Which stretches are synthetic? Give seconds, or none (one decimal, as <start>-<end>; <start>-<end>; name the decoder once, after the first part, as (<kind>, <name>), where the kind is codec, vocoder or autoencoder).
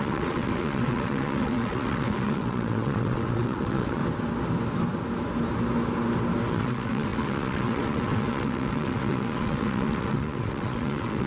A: 0.0-4.0 (vocoder, WaveNeXt); 6.5-11.3